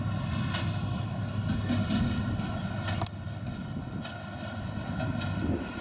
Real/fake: real